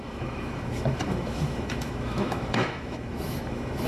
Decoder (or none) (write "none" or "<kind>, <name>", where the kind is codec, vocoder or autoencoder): autoencoder, DAC-VAE